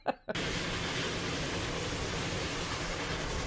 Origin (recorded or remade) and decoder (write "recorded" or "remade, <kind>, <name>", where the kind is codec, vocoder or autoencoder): recorded